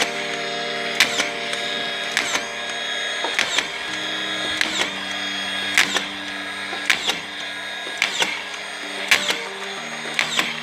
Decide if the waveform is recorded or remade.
recorded